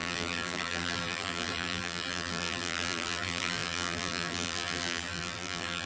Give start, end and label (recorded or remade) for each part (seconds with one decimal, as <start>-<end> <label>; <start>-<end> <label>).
0.0-5.9 remade